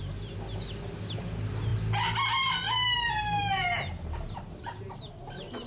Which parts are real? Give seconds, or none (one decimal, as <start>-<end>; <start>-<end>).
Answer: 0.0-5.7